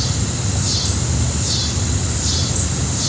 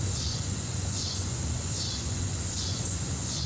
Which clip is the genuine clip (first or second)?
first